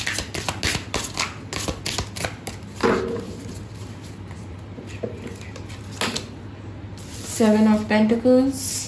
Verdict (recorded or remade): recorded